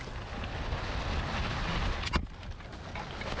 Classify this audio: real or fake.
real